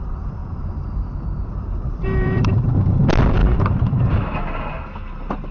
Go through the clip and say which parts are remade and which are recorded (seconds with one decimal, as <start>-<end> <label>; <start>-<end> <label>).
0.0-0.4 recorded; 0.4-2.5 remade; 2.5-3.4 recorded; 3.4-4.0 remade; 4.0-5.5 recorded